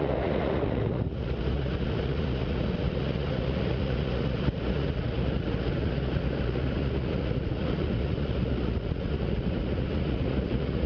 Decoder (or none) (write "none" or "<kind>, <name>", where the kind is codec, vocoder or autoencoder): vocoder, Vocos